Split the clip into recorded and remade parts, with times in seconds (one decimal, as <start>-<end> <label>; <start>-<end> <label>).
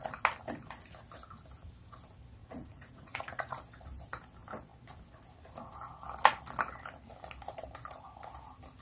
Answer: 0.0-2.4 recorded; 2.4-3.6 remade; 3.6-8.8 recorded